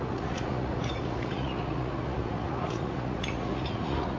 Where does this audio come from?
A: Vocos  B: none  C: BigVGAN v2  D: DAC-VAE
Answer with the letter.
A